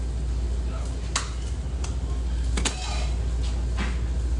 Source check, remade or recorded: recorded